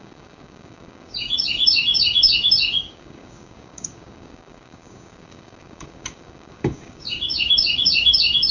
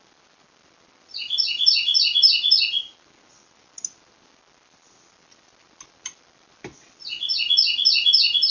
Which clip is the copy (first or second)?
first